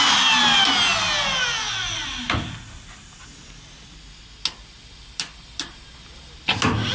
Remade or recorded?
recorded